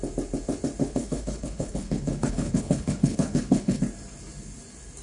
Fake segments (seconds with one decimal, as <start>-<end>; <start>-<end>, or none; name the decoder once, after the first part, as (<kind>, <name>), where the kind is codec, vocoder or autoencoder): 0.8-3.8 (codec, HILCodec)